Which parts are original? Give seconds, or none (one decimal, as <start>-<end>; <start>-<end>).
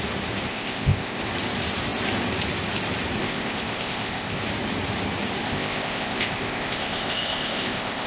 0.0-0.5; 1.2-3.2; 4.4-5.4